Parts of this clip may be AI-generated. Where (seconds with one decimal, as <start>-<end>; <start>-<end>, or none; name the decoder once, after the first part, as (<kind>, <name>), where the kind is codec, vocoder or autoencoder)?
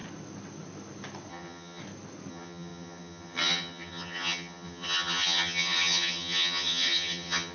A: 1.3-1.8 (vocoder, HiFi-GAN); 2.3-7.5